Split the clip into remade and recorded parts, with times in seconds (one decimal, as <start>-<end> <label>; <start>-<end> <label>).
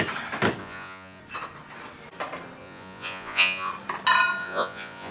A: 0.0-0.6 recorded; 0.6-1.2 remade; 1.2-2.6 recorded; 2.6-3.7 remade; 3.7-4.4 recorded; 4.4-5.1 remade